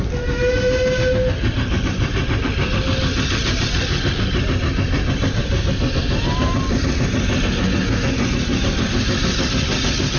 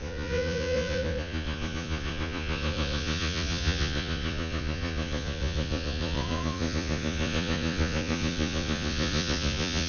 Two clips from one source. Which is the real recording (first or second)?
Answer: first